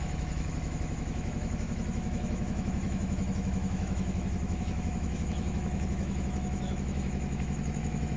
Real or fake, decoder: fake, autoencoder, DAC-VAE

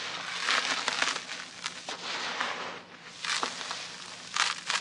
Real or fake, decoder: real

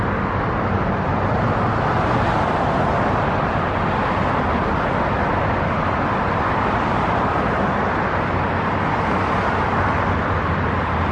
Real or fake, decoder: real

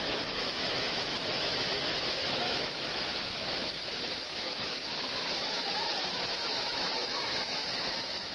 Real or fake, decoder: fake, autoencoder, DAC-VAE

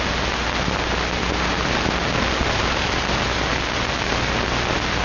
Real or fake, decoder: real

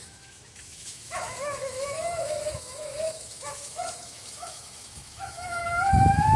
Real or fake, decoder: fake, autoencoder, DAC-VAE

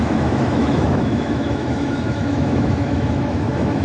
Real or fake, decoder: fake, autoencoder, DAC-VAE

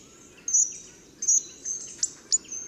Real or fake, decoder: real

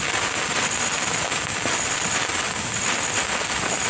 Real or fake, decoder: real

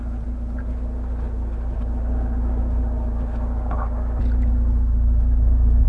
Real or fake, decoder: real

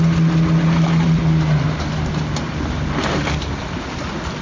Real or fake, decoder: real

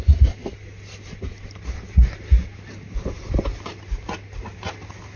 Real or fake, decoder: real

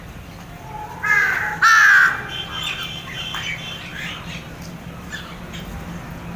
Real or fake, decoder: real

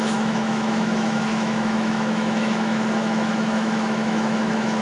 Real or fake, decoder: fake, autoencoder, DAC-VAE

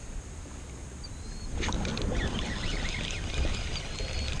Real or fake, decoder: real